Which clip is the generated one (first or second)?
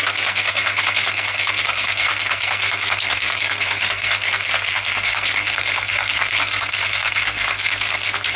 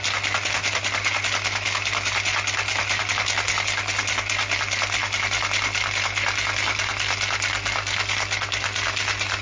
first